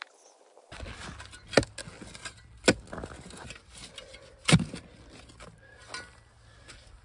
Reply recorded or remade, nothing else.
recorded